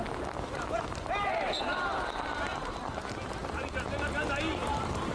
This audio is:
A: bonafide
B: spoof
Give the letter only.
B